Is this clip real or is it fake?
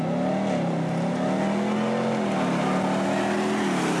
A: real